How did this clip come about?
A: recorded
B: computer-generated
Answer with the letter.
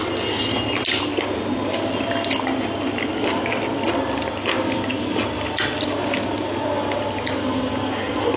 A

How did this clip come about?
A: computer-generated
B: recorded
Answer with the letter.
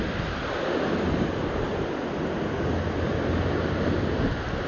B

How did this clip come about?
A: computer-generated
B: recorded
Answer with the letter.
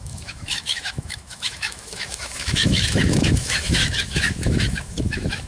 A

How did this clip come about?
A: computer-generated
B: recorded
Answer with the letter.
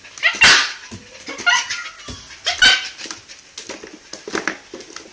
B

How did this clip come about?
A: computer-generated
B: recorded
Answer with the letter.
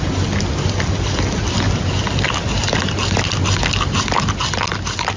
B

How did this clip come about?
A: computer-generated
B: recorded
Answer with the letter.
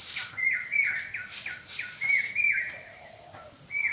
B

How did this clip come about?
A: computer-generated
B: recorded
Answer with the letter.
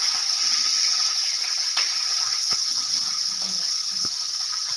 A